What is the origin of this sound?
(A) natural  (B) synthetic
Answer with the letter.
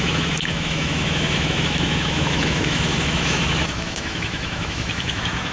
B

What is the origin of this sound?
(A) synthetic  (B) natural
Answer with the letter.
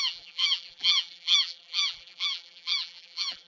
A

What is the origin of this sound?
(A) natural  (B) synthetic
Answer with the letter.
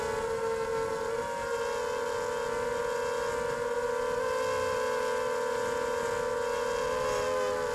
A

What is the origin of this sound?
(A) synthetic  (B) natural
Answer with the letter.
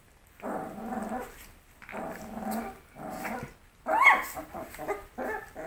B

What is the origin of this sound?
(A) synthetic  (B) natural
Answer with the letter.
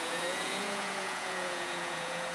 A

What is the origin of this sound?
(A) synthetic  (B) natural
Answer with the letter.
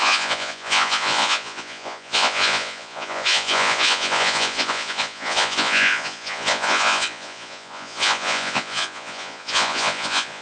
A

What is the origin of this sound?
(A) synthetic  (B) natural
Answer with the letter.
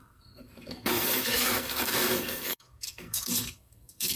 A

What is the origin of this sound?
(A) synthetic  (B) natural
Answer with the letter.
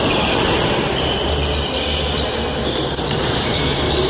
B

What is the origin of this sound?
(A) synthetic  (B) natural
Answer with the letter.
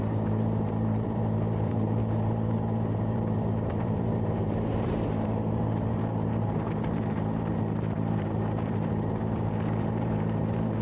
A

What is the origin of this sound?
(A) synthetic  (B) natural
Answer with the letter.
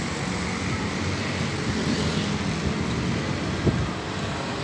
B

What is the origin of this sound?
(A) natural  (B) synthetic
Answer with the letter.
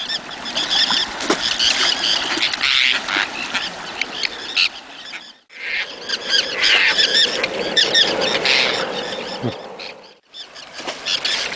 A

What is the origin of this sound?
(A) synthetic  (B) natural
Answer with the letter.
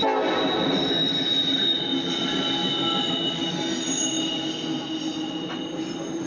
B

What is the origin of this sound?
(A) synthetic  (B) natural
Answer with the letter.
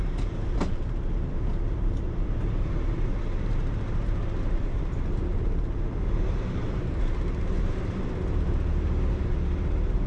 A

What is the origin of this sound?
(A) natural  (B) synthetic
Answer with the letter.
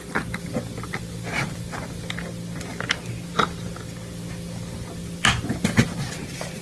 A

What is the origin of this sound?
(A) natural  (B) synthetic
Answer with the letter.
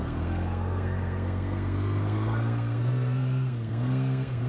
B